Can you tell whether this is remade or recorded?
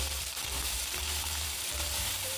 remade